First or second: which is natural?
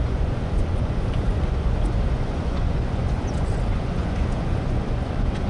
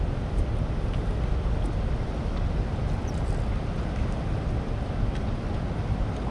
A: second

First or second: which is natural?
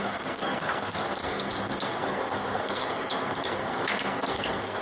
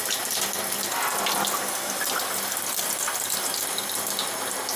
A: second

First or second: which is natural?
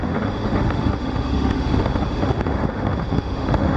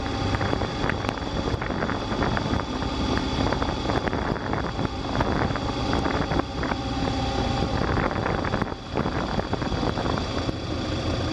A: second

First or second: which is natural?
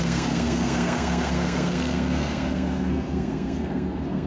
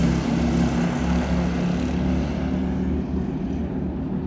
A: second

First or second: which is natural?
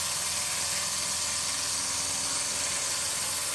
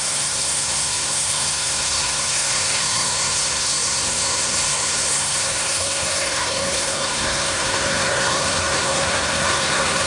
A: first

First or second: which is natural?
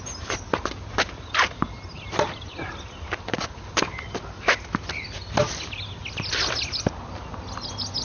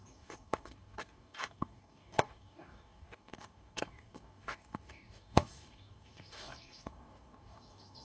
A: first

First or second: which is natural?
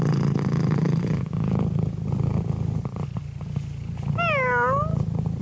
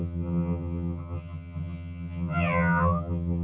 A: first